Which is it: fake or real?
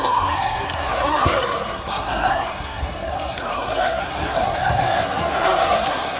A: fake